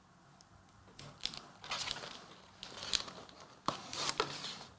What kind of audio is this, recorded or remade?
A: recorded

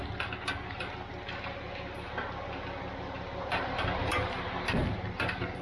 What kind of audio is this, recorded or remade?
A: recorded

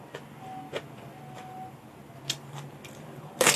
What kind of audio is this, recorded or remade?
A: recorded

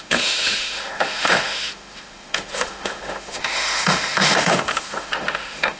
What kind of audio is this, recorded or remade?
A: remade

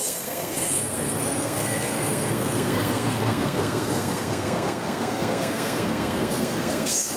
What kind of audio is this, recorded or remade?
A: remade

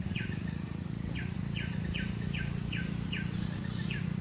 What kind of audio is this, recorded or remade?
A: remade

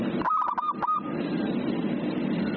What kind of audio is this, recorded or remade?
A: recorded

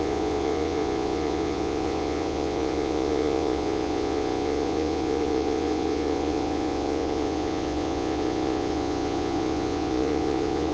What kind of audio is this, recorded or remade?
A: remade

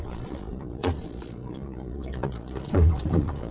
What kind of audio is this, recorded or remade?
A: remade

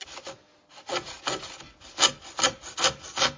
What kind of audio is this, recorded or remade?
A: recorded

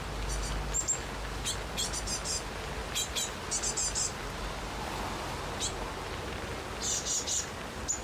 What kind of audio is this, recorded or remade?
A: recorded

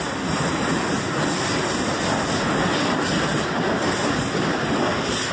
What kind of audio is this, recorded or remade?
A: recorded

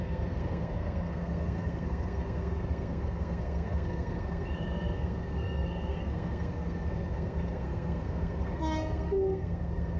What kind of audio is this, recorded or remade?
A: remade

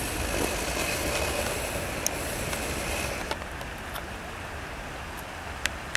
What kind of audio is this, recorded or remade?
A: recorded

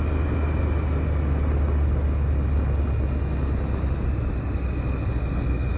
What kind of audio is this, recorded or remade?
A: recorded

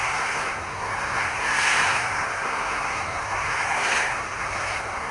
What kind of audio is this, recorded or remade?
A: remade